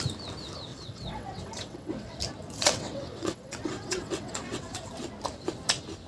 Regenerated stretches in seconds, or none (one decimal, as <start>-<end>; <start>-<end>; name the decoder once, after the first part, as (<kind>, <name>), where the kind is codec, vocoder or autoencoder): 0.7-2.2 (vocoder, WaveNeXt); 2.6-4.9